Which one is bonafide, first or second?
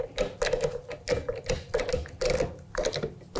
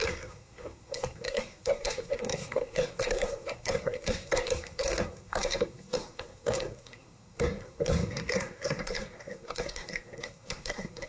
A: first